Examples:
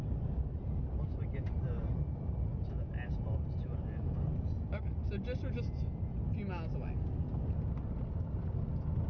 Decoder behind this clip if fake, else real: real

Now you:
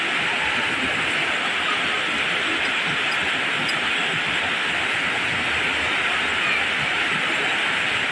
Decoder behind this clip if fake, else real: real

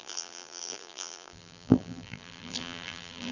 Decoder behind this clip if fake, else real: fake, vocoder, BigVGAN v2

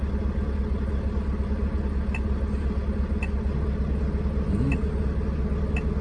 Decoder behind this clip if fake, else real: real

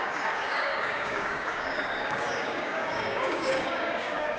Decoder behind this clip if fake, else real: fake, codec, DAC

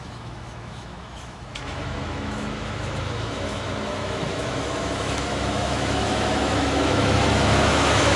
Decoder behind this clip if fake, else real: fake, autoencoder, DAC-VAE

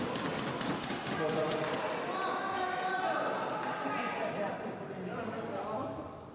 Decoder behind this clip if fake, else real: real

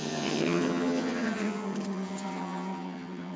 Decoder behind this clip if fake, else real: fake, vocoder, HiFi-GAN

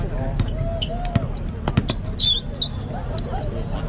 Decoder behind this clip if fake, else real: real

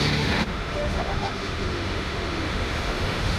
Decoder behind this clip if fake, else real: fake, autoencoder, DAC-VAE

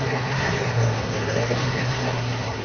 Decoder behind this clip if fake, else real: fake, codec, SNAC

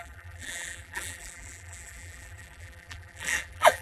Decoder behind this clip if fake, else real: fake, vocoder, BigVGAN v2